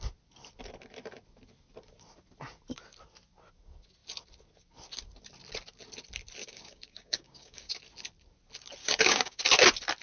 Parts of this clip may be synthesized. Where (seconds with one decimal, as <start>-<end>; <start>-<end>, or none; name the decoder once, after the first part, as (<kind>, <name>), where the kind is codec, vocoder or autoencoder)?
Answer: 6.4-7.7 (codec, DAC); 8.8-9.4

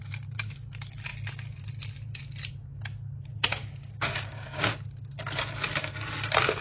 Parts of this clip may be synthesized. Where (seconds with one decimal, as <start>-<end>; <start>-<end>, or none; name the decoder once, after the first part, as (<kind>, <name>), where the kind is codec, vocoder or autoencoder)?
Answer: 3.5-4.7 (codec, DAC)

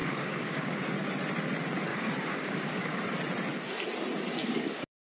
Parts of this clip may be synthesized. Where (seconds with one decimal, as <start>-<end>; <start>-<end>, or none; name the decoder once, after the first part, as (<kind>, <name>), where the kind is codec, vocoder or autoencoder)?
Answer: 0.0-0.9 (codec, DAC); 1.9-3.0; 4.4-5.2

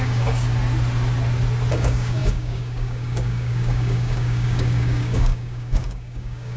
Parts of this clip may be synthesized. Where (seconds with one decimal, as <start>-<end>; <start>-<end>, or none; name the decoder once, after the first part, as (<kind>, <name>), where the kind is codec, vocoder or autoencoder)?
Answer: 0.0-0.5 (codec, DAC); 1.7-6.6

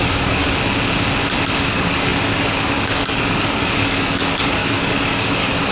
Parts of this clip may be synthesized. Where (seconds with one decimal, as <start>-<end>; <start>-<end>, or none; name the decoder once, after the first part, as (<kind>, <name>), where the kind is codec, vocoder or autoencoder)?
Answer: 0.0-0.4 (codec, DAC); 1.6-5.7